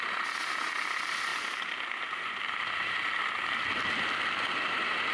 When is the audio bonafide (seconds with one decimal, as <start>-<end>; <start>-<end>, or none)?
0.0-1.3; 2.6-5.1